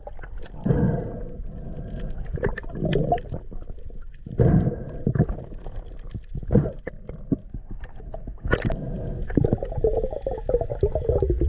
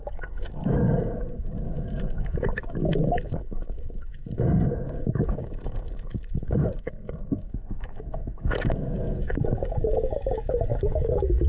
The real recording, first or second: first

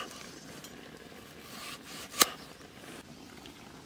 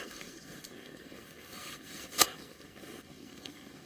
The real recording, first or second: first